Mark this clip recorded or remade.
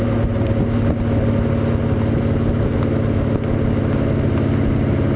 recorded